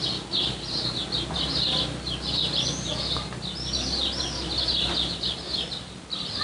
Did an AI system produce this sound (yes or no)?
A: no